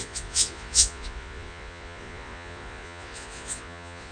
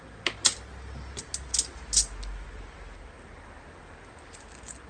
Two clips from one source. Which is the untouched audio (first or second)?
second